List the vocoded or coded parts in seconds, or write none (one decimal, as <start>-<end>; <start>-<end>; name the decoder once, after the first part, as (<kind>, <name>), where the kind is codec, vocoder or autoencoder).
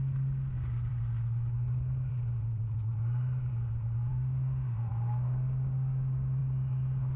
4.1-4.9 (autoencoder, DAC-VAE)